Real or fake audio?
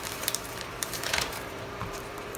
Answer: fake